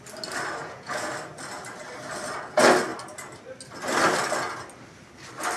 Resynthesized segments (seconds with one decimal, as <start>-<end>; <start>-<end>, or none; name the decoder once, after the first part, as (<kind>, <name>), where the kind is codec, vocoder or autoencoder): 0.6-1.1 (vocoder, Vocos)